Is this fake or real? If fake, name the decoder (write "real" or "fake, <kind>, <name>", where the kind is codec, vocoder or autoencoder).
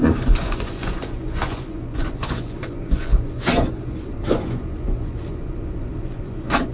fake, vocoder, Vocos